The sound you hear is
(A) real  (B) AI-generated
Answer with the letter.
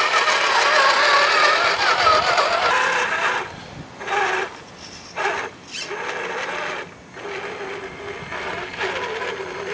A